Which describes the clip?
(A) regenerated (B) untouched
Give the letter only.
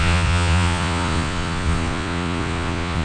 A